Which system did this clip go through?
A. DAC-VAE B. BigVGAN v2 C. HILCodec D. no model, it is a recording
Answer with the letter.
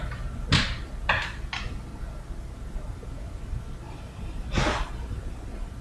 D